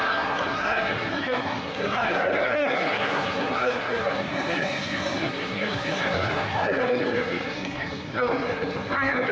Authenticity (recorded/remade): remade